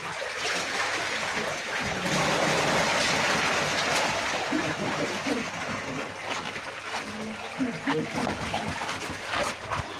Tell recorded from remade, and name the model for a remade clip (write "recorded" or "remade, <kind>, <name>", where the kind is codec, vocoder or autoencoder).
recorded